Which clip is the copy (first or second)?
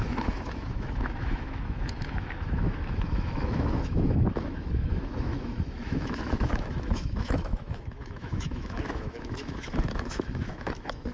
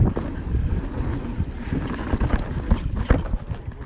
first